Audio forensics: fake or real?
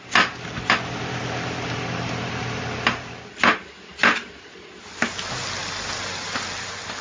real